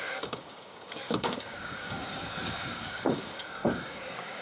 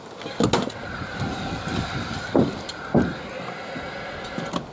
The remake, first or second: first